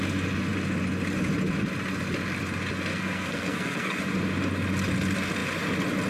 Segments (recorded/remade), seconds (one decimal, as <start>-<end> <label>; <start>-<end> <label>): 0.0-2.9 recorded; 2.9-4.0 remade; 4.0-6.1 recorded